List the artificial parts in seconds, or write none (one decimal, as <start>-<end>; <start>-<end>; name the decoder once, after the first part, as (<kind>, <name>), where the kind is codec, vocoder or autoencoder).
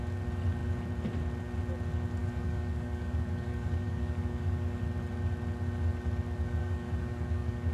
2.2-4.8 (codec, DAC); 6.6-7.7